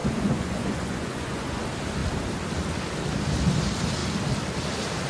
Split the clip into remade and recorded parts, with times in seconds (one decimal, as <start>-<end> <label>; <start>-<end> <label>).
0.0-1.6 remade; 1.6-5.1 recorded